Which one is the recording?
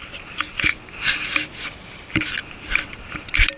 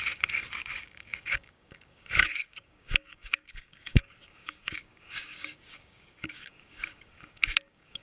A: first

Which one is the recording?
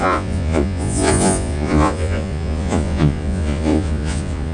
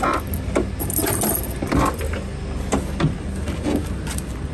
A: second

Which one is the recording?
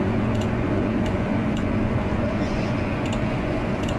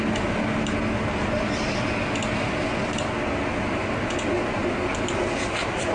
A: second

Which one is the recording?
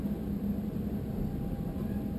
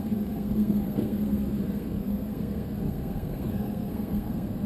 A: first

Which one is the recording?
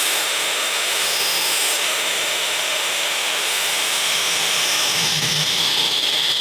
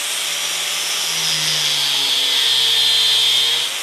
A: second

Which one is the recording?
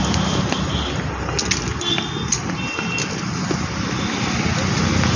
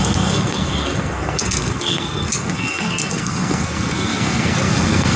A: first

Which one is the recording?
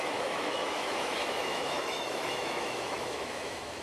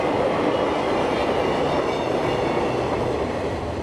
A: second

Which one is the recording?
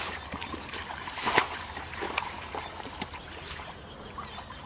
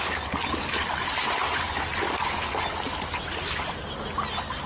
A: second